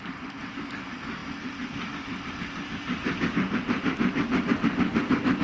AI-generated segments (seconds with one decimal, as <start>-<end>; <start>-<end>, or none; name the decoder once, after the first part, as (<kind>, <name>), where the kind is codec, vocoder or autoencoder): none